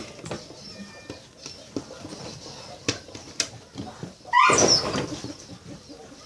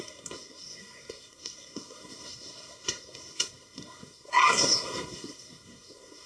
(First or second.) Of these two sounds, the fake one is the second